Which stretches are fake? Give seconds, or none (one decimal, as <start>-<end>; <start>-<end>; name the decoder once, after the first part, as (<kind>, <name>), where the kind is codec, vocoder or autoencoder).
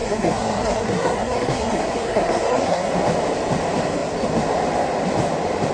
0.0-2.9 (codec, SNAC)